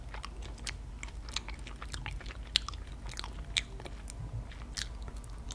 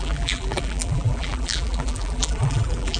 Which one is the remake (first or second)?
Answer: second